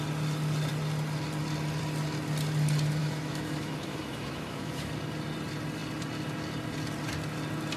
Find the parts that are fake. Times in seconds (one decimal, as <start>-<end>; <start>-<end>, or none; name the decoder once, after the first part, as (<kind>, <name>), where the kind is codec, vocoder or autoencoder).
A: 3.0-4.9 (autoencoder, DAC-VAE)